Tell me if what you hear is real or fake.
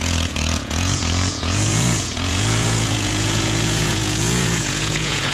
fake